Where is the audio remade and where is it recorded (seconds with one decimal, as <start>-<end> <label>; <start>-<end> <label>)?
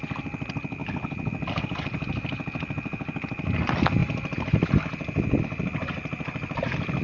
0.0-4.0 recorded; 4.0-5.4 remade; 5.4-7.0 recorded